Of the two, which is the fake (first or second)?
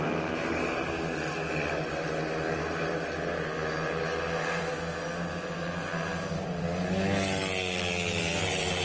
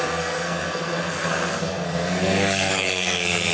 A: second